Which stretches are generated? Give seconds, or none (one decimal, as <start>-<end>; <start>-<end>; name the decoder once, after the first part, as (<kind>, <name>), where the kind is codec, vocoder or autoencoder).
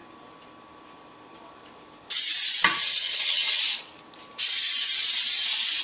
2.8-3.6 (vocoder, HiFi-GAN)